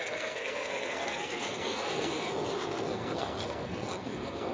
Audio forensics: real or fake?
fake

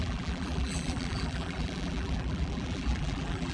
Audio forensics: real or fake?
fake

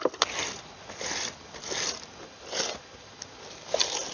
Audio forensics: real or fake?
real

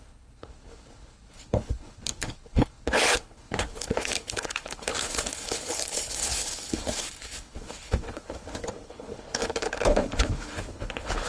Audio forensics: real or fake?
fake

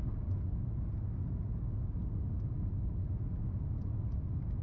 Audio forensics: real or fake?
real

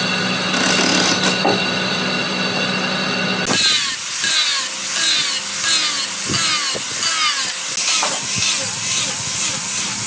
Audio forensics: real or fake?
real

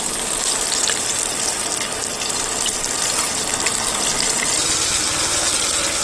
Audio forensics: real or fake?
real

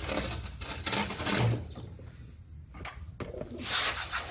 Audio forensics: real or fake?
real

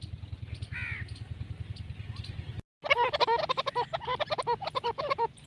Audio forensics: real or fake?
real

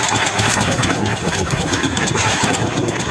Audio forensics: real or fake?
fake